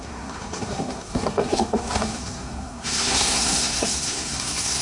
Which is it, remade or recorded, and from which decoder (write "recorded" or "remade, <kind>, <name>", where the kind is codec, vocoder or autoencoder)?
remade, codec, SNAC